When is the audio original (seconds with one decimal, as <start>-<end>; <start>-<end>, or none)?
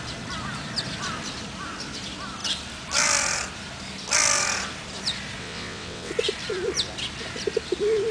0.0-5.4; 6.1-8.1